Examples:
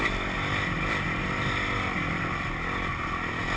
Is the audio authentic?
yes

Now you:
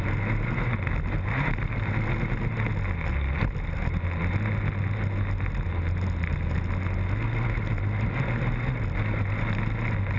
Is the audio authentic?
yes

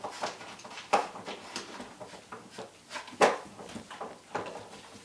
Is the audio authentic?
yes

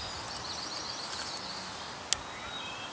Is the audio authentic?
yes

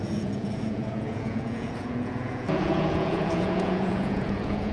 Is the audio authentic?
no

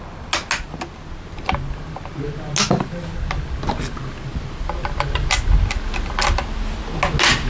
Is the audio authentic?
yes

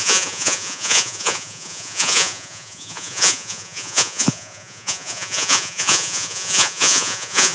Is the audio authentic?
no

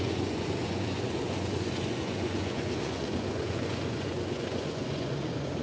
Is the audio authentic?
no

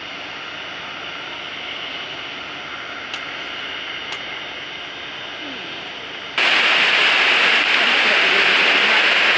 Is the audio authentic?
yes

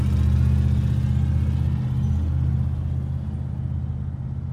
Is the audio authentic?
yes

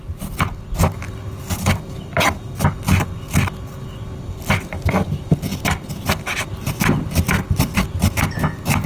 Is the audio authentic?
yes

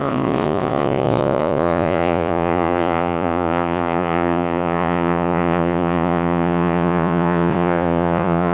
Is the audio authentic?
no